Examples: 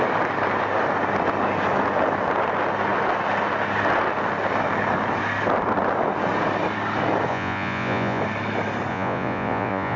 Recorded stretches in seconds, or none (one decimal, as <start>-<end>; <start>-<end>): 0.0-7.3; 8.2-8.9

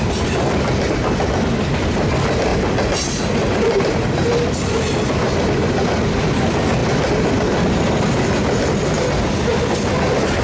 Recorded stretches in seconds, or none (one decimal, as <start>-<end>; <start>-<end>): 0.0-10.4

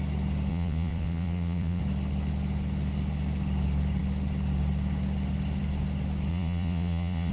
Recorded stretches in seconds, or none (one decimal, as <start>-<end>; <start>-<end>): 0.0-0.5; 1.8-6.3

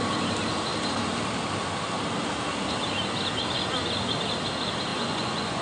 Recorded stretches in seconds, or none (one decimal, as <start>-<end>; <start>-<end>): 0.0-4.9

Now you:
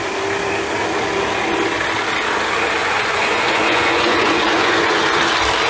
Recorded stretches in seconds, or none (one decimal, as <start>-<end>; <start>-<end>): 0.0-2.8; 5.2-5.7

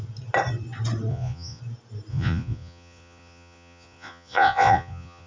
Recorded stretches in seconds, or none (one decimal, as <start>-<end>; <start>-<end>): 0.0-1.1; 1.6-2.1